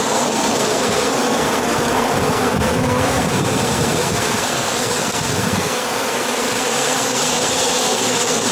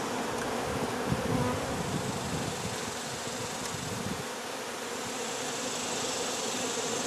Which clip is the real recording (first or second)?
second